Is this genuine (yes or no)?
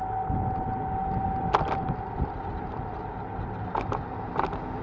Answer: yes